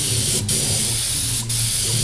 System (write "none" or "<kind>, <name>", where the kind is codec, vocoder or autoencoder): none